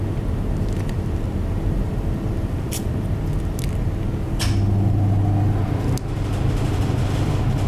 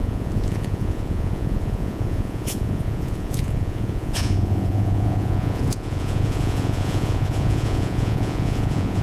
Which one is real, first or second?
first